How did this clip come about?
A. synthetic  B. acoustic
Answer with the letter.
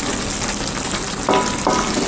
B